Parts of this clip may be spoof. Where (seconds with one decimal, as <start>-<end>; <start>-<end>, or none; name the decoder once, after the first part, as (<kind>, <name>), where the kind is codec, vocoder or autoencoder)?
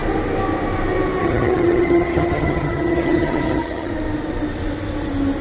1.2-3.9 (vocoder, HiFi-GAN)